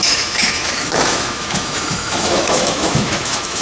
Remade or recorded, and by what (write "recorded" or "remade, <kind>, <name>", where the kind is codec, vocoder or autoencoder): remade, autoencoder, DAC-VAE